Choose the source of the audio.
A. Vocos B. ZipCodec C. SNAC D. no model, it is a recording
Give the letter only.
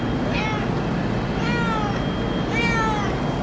D